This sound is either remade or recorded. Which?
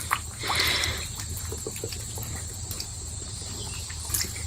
recorded